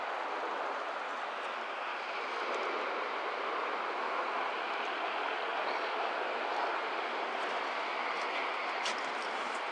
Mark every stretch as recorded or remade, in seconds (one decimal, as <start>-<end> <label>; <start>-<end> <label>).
0.0-9.7 recorded